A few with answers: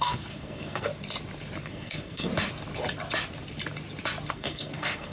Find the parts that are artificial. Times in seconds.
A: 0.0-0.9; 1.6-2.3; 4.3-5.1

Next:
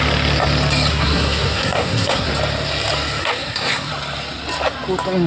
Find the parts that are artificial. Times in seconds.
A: 0.9-2.3; 3.2-3.9

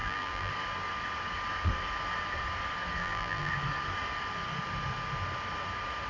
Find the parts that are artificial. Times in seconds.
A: 0.0-0.5; 3.0-3.5

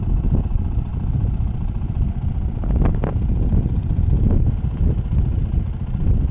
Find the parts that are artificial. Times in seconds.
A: none

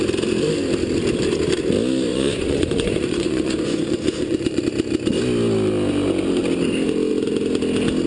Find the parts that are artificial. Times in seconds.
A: 2.1-4.6

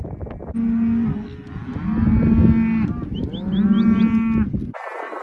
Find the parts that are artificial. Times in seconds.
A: none

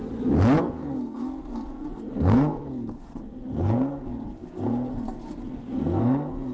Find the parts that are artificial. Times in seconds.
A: 0.6-6.5